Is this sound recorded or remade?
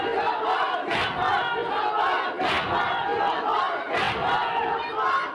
recorded